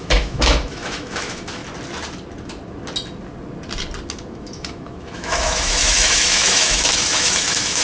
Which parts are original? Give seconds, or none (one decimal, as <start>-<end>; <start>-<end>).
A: 1.6-4.3